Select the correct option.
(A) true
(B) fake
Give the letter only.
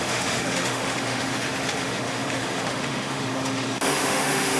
B